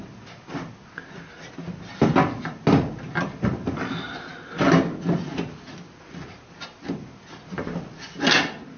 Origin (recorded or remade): recorded